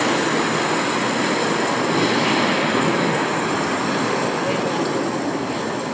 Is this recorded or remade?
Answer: recorded